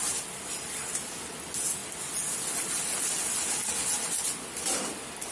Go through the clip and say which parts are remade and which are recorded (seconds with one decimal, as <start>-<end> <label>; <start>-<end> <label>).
0.0-5.3 recorded